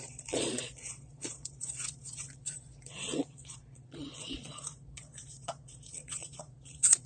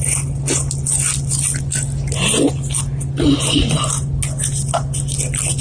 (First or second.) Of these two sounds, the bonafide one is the second